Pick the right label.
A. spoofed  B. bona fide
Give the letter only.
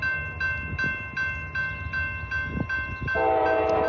B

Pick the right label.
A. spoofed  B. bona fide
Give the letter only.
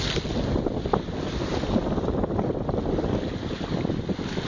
B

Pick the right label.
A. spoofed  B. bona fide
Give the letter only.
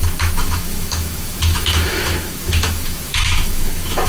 A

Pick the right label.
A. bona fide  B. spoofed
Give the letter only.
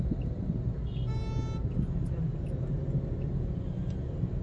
A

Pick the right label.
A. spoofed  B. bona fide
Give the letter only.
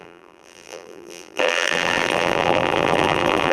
A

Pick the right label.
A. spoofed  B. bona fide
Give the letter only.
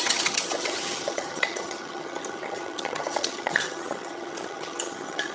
A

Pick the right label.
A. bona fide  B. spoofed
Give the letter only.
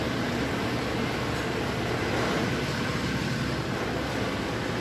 A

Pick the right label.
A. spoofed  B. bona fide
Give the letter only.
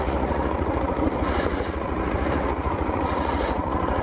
A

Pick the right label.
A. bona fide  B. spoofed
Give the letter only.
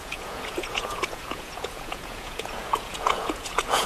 B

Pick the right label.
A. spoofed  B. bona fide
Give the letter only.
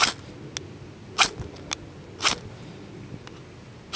B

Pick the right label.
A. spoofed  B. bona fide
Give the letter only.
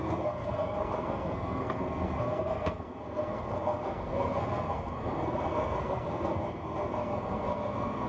A